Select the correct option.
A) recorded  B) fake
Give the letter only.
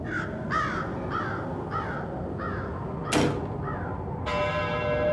A